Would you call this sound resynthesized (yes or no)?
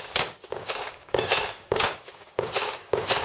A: yes